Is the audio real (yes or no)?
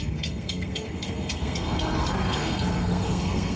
no